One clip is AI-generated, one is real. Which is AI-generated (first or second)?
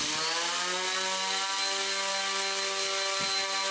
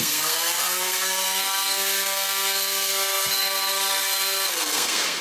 second